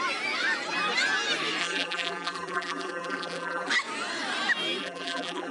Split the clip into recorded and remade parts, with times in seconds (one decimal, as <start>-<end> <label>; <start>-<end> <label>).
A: 0.0-1.6 recorded; 1.6-3.7 remade; 3.7-4.8 recorded; 4.8-5.5 remade